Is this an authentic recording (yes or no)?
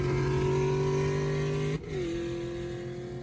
yes